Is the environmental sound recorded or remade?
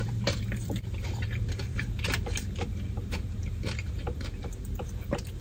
remade